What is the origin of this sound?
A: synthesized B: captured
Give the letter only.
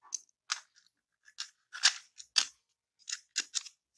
B